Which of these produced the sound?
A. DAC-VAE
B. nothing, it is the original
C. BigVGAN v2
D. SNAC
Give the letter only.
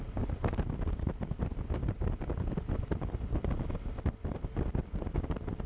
C